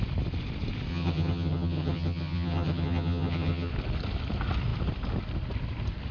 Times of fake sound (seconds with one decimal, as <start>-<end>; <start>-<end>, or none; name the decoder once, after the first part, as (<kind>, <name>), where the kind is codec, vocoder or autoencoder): 0.9-3.7 (vocoder, HiFi-GAN)

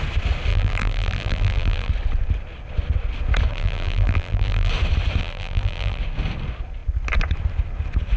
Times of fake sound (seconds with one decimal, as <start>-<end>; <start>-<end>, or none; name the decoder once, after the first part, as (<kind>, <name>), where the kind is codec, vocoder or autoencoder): 0.5-1.9 (vocoder, BigVGAN v2); 3.5-4.7; 5.2-6.0

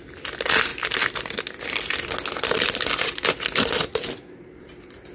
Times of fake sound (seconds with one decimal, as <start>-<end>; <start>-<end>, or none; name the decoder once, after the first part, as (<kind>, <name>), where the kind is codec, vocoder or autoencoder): none

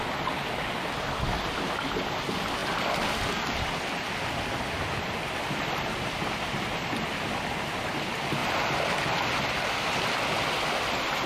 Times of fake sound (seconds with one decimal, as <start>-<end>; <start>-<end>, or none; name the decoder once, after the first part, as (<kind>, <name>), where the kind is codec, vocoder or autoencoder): none

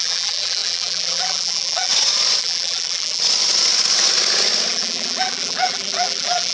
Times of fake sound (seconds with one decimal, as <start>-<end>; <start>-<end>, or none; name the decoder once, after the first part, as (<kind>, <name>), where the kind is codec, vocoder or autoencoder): 0.0-1.9 (vocoder, BigVGAN v2); 2.4-3.2; 4.7-6.5

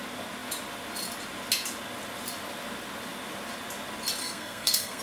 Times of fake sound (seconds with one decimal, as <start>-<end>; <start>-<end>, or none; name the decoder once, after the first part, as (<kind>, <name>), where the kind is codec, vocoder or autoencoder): 4.2-5.0 (codec, SNAC)

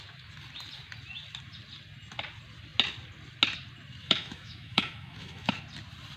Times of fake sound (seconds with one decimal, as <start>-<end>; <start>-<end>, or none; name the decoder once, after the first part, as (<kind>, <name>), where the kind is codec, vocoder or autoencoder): 4.0-5.5 (autoencoder, DAC-VAE)

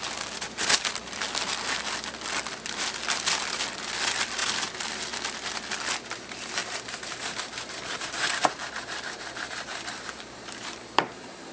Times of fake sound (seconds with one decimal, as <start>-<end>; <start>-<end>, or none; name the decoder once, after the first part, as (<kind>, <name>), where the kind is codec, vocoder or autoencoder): 6.6-11.5 (vocoder, BigVGAN v2)